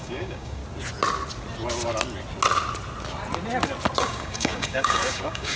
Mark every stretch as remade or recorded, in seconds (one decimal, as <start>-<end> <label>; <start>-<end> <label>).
0.0-0.6 remade; 0.6-4.0 recorded; 4.0-5.6 remade